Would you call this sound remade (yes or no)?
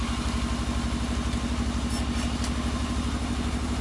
no